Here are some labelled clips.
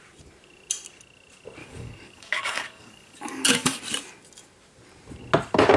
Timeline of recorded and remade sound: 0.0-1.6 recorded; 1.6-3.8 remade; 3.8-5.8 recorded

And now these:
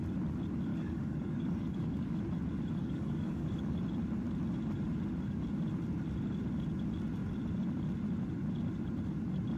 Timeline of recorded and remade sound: 0.0-0.7 recorded; 0.7-2.2 remade; 2.2-2.8 recorded; 2.8-3.8 remade; 3.8-9.6 recorded

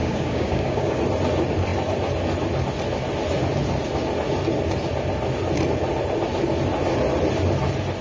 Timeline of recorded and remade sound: 0.0-1.0 remade; 1.0-8.0 recorded

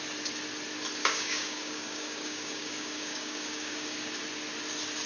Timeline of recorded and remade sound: 0.0-1.0 recorded; 1.0-4.1 remade; 4.1-5.1 recorded

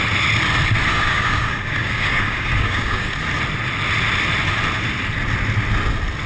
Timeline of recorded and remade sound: 0.0-0.9 recorded; 0.9-3.1 remade; 3.1-6.3 recorded

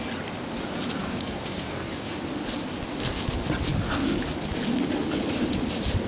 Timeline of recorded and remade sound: 0.0-1.0 recorded; 1.0-2.2 remade; 2.2-6.1 recorded

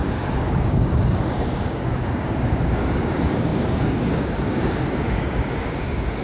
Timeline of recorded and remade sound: 0.0-6.2 remade

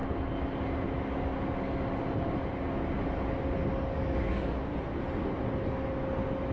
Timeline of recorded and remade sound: 0.0-3.9 recorded; 3.9-4.7 remade; 4.7-6.5 recorded